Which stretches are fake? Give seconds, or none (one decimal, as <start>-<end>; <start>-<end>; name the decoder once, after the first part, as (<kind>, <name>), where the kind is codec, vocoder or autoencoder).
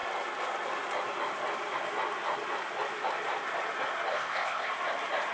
4.1-4.7 (codec, ZipCodec)